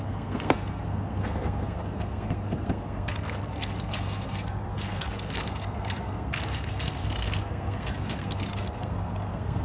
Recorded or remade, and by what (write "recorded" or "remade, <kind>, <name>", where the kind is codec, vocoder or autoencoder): remade, codec, SNAC